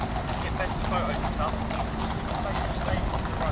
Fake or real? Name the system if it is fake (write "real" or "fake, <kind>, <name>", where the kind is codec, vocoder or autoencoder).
real